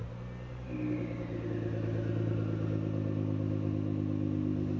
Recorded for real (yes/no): yes